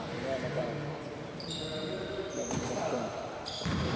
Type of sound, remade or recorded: recorded